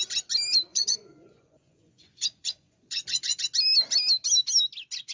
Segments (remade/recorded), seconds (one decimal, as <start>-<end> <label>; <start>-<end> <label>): 0.0-0.7 recorded; 0.7-3.4 remade; 3.4-5.1 recorded